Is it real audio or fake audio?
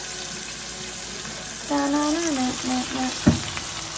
real